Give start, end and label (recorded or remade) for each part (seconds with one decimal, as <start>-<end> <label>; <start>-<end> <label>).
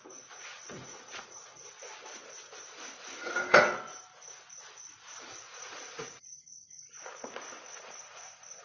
0.0-1.5 remade; 1.5-5.4 recorded; 5.4-8.6 remade